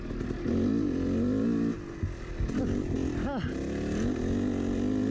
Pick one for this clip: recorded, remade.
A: recorded